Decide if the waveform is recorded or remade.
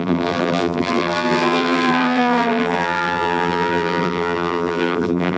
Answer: remade